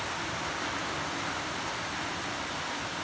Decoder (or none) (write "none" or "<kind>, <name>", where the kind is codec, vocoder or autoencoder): none